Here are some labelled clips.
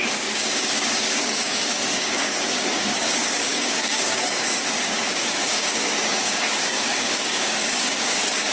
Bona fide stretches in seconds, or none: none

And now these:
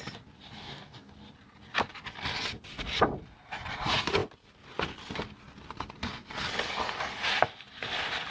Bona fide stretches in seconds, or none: 0.0-0.6; 1.1-8.3

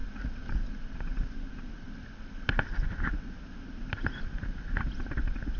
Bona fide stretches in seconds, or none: 0.0-5.6

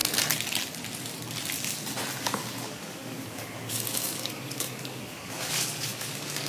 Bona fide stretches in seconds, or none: 0.0-2.2

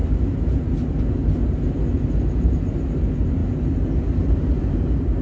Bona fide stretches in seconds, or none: 0.0-5.2